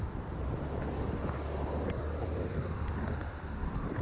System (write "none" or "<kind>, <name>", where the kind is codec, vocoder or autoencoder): vocoder, BigVGAN v2